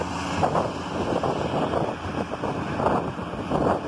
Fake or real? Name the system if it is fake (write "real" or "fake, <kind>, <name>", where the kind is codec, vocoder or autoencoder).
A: real